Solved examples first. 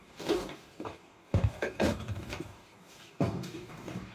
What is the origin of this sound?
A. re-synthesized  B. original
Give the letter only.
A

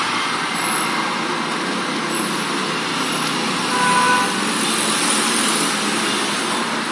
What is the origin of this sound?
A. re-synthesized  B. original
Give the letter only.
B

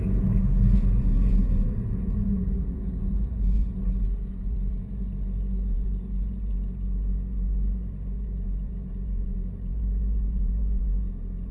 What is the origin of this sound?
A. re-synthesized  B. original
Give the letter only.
A